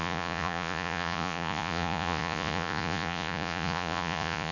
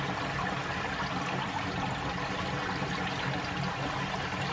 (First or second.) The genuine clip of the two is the second